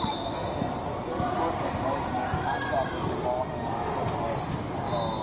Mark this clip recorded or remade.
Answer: recorded